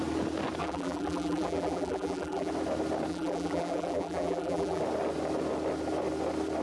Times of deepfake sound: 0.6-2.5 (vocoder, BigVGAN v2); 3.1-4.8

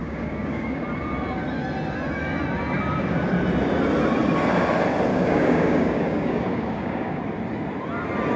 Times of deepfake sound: 0.0-0.8 (codec, DAC); 5.1-7.2

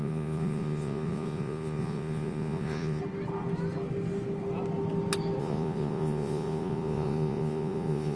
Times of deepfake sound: 0.0-3.0 (vocoder, Vocos); 5.4-8.2

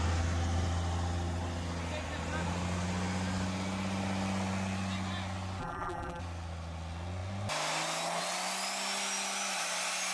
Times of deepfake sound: 5.6-6.2 (vocoder, BigVGAN v2)